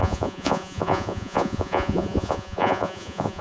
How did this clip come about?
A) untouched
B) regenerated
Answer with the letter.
B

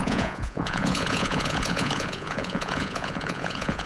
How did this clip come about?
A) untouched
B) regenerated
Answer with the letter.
B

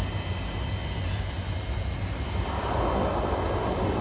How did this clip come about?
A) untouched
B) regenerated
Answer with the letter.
A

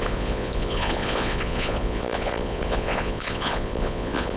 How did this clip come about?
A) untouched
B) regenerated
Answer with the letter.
B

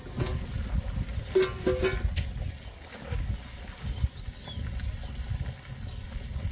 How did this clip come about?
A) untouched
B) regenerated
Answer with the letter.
A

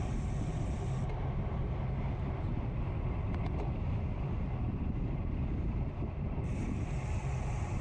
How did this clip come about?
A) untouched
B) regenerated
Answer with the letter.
A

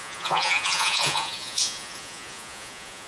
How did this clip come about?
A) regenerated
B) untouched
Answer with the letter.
A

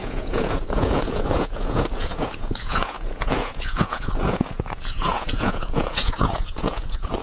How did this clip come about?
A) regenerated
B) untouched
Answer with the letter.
A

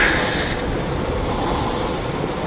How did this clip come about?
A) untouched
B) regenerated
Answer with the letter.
A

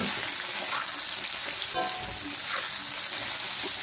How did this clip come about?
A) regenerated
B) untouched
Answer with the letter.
B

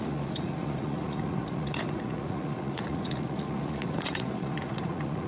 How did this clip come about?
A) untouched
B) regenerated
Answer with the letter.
B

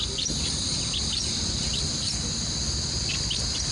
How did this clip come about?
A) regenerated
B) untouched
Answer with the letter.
B